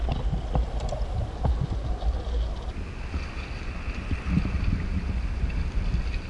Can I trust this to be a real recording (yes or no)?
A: yes